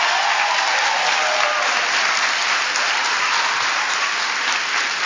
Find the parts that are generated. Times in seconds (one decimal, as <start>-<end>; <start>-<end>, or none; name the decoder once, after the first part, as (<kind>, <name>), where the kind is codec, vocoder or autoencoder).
none